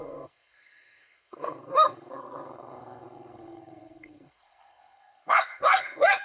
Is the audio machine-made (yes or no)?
yes